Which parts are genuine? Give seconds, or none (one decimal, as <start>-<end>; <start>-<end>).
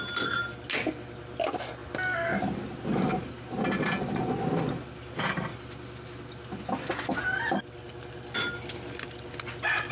0.0-9.9